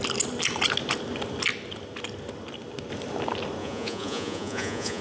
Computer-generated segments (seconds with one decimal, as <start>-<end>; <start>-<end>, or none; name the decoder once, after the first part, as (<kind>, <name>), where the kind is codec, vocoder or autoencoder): 3.6-5.0 (vocoder, Vocos)